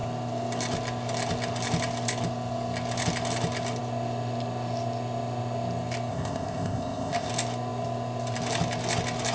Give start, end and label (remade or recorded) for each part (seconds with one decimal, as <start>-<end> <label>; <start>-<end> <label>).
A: 0.0-6.1 recorded; 6.1-7.3 remade; 7.3-9.3 recorded